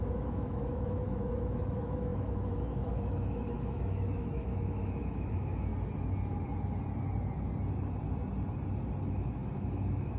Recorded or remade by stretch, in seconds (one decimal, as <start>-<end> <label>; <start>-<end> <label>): 0.0-5.7 remade; 5.7-9.0 recorded; 9.0-10.2 remade